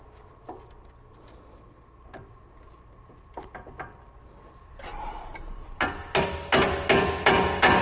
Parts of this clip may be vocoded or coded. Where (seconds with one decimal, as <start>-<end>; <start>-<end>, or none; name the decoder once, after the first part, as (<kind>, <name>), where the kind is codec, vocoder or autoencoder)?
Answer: none